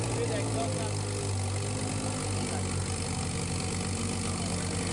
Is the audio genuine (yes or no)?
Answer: yes